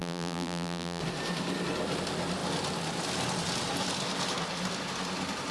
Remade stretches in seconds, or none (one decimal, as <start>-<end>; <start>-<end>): 0.0-1.0